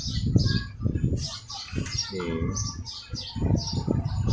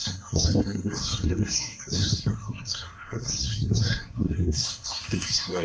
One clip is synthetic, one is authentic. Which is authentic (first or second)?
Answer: first